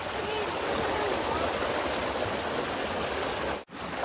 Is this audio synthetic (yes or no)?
no